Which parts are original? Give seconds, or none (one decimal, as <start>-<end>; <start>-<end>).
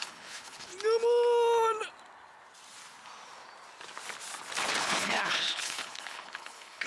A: 0.7-4.8